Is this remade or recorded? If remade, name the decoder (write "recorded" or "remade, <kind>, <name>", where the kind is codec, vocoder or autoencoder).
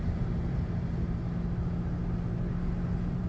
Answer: recorded